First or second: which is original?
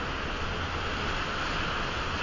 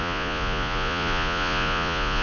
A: first